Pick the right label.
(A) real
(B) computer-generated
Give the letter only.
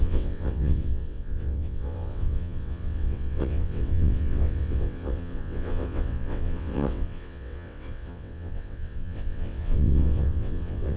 B